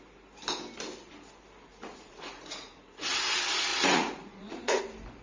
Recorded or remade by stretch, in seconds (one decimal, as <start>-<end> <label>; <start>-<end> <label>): 0.0-1.7 recorded; 1.7-3.0 remade; 3.0-3.7 recorded; 3.7-4.8 remade; 4.8-5.2 recorded